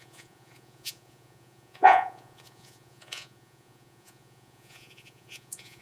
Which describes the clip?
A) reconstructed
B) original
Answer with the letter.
A